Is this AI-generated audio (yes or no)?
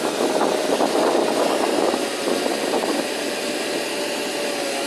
no